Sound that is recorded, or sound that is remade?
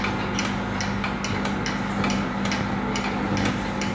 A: recorded